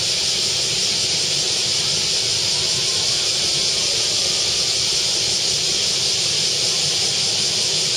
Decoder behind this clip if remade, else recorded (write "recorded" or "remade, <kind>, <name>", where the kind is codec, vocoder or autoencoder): recorded